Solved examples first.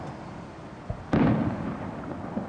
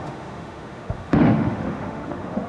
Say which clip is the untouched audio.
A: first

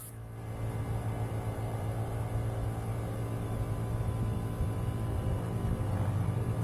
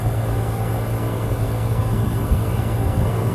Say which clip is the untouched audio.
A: first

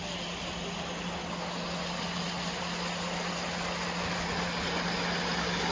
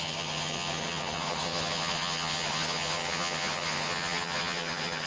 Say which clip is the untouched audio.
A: first